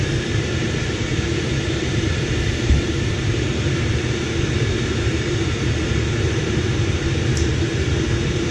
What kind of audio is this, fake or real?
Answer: fake